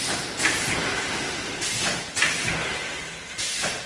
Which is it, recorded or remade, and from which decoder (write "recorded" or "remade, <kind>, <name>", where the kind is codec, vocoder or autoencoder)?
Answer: recorded